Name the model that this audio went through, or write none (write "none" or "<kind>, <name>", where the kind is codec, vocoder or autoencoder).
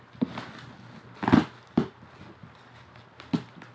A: none